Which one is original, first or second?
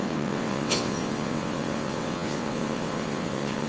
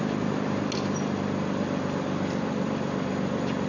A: second